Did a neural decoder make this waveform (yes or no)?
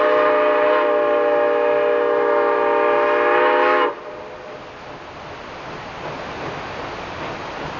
no